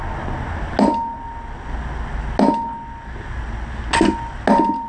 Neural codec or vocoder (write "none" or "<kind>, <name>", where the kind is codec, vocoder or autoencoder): none